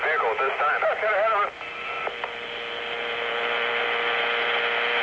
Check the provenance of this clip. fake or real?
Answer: real